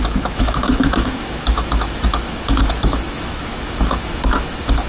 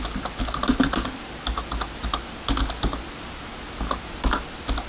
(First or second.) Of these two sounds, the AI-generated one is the first